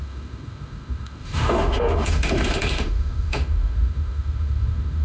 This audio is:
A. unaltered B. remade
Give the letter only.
B